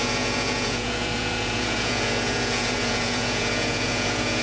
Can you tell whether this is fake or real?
fake